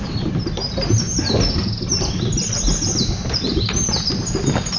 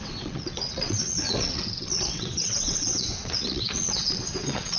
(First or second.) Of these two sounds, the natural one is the first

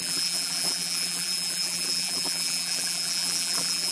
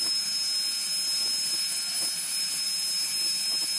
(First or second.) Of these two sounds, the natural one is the second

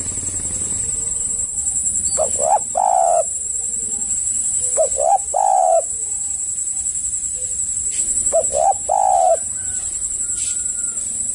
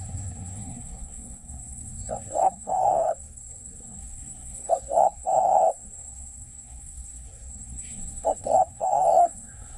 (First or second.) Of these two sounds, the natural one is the first